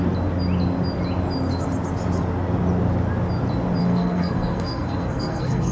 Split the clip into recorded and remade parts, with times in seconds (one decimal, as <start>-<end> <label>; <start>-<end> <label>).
0.0-3.8 recorded; 3.8-5.7 remade